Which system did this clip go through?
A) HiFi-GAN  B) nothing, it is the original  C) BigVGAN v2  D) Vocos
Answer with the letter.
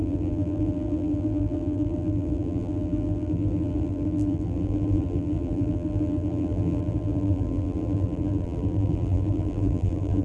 C